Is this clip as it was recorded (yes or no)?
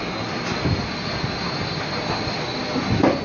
yes